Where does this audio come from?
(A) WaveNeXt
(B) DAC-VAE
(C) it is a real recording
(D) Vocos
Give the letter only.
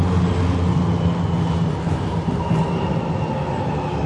C